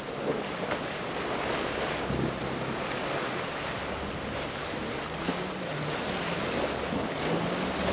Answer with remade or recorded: recorded